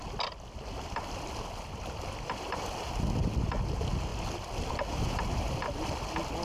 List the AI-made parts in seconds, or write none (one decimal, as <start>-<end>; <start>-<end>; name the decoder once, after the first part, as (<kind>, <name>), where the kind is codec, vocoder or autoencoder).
none